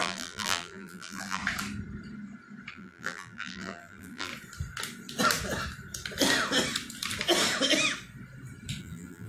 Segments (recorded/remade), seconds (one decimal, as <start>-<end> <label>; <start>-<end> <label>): 0.0-1.4 remade; 1.4-2.7 recorded; 2.7-4.3 remade; 4.3-8.8 recorded; 8.8-9.3 remade